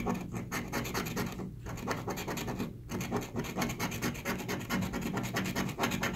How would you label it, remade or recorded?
recorded